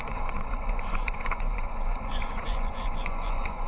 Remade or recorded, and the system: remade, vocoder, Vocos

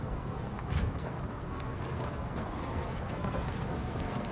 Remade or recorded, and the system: remade, codec, SNAC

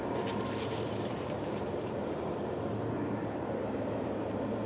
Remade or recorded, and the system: remade, vocoder, BigVGAN v2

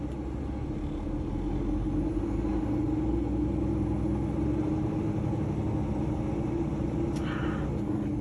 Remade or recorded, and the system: recorded